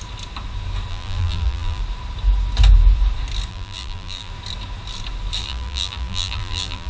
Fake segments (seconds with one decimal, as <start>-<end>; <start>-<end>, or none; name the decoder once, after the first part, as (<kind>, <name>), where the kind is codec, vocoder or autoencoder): 0.9-1.8 (vocoder, BigVGAN v2); 3.5-4.3; 5.4-6.9